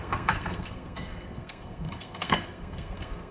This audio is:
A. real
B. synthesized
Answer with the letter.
B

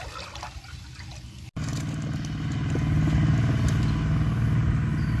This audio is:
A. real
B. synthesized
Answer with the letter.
A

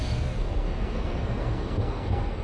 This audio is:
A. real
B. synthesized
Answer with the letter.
B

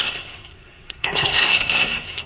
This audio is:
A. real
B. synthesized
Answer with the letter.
B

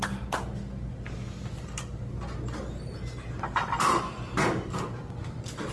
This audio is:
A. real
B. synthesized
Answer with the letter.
A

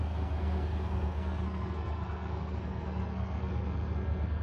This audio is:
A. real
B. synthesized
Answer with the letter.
B